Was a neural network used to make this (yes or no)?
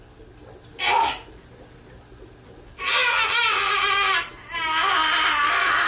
no